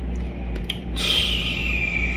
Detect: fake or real fake